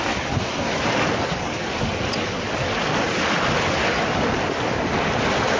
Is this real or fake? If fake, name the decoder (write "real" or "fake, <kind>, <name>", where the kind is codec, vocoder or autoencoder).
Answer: real